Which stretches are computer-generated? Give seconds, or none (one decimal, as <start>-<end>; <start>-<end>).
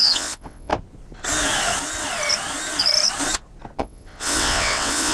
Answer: 0.0-0.7; 3.8-5.1